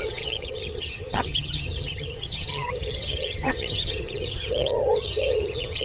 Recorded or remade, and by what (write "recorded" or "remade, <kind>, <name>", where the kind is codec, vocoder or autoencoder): remade, vocoder, HiFi-GAN